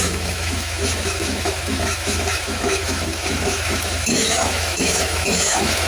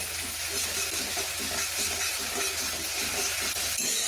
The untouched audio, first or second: second